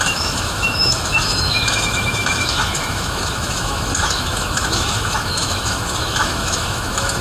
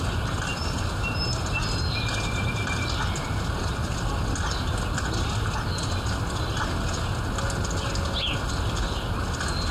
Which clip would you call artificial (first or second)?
first